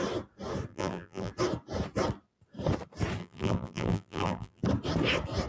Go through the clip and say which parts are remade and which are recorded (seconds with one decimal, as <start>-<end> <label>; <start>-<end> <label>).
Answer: 0.0-0.7 recorded; 0.7-1.3 remade; 1.3-3.2 recorded; 3.2-4.6 remade; 4.6-5.5 recorded